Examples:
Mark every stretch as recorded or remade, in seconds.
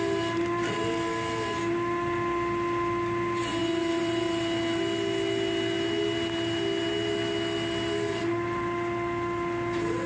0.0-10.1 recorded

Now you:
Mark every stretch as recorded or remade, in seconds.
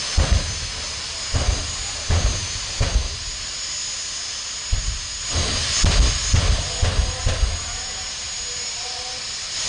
0.0-9.7 recorded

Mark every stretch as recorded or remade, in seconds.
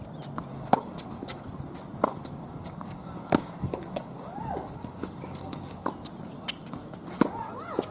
0.0-0.5 recorded; 0.5-1.4 remade; 1.4-2.1 recorded; 2.1-5.9 remade; 5.9-7.9 recorded